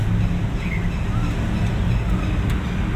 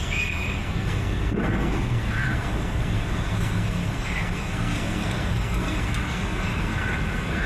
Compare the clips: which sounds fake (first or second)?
second